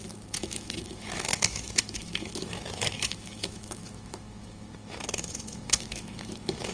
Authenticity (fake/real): fake